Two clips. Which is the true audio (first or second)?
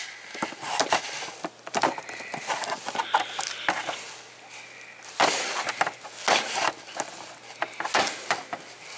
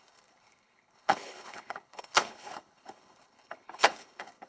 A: first